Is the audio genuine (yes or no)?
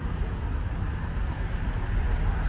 yes